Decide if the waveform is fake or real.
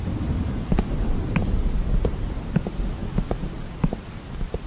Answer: real